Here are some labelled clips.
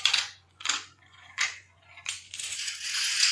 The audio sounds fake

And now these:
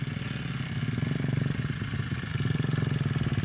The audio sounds real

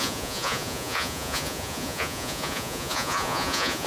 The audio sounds fake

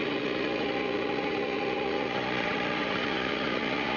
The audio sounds fake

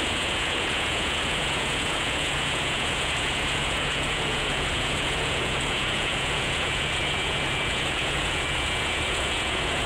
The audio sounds fake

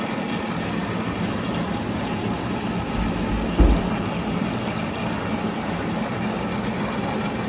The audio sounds real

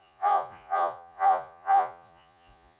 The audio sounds fake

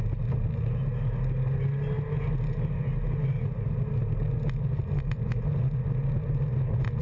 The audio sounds real